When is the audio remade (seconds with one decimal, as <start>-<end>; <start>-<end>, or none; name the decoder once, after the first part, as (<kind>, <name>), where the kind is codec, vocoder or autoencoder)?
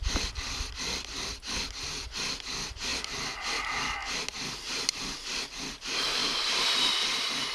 6.2-6.9 (vocoder, BigVGAN v2)